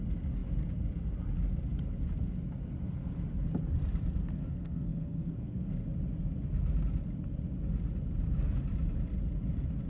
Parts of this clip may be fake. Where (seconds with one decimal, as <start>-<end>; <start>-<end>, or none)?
4.4-5.7